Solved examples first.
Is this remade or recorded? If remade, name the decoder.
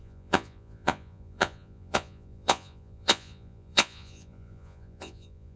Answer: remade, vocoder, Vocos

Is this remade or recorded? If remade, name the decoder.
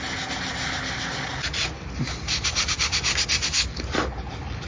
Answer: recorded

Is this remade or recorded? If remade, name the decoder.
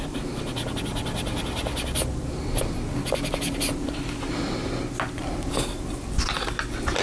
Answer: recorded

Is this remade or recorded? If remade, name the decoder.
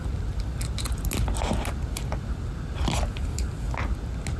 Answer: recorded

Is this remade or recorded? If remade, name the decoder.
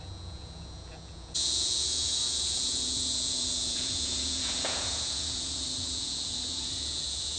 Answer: remade, vocoder, Vocos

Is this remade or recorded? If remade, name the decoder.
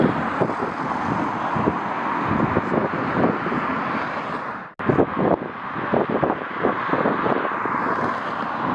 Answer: recorded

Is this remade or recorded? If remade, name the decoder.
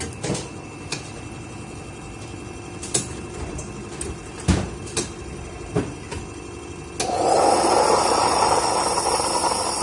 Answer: recorded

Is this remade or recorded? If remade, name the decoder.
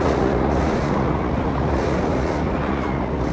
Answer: remade, vocoder, Vocos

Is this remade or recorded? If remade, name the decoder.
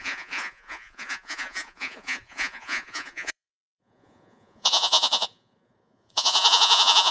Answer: remade, vocoder, Vocos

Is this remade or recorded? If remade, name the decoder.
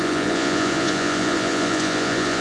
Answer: remade, vocoder, Vocos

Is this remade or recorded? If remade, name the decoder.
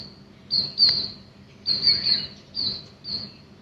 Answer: recorded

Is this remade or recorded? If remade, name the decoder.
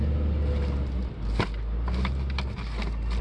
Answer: recorded